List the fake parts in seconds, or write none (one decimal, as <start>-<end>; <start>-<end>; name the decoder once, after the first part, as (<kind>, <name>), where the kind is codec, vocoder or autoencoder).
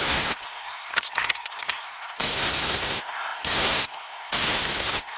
0.0-5.2 (codec, SNAC)